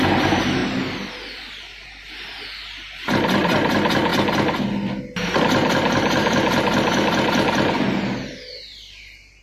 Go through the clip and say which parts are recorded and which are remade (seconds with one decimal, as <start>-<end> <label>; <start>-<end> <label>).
0.0-9.4 recorded